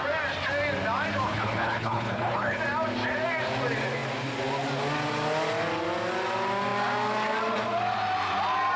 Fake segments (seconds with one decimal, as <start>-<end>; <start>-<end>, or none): 1.3-2.6